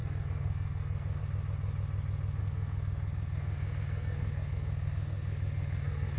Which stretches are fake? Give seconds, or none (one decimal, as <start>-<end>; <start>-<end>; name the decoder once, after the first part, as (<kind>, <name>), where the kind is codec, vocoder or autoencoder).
0.0-1.2 (codec, SNAC); 2.4-6.2